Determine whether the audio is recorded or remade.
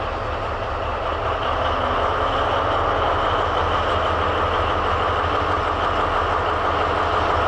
recorded